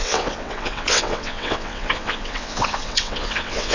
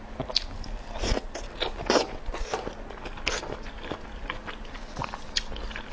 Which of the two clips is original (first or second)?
second